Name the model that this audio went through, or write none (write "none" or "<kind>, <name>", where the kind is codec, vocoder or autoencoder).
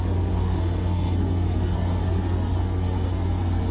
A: codec, SNAC